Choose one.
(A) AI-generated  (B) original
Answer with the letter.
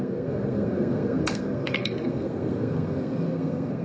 A